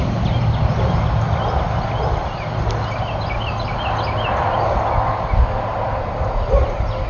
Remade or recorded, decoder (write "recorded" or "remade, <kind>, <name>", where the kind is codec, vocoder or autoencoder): recorded